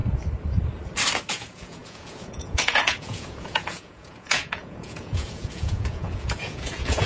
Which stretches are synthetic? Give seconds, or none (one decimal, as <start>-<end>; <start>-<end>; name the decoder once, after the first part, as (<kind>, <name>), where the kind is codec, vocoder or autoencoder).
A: 1.3-7.1 (vocoder, Vocos)